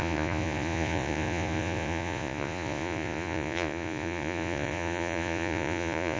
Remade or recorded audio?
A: remade